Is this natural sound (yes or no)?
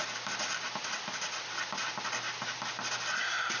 no